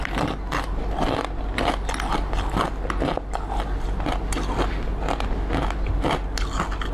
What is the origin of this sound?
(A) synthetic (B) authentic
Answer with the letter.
B